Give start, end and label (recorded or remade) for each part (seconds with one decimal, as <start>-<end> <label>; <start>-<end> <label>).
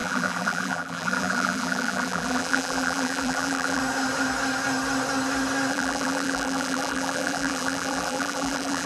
0.0-3.8 remade; 3.8-5.7 recorded; 5.7-8.9 remade